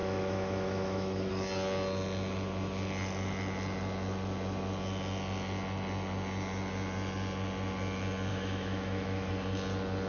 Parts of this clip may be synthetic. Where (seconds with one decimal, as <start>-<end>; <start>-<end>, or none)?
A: 0.0-1.3; 8.3-9.3